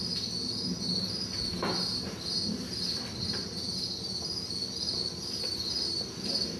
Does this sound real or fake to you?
real